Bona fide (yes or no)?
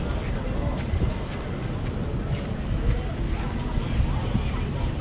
yes